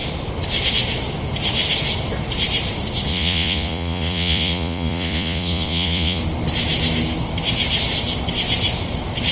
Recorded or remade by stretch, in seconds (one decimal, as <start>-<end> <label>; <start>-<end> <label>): 0.0-3.1 recorded; 3.1-6.2 remade; 6.2-9.3 recorded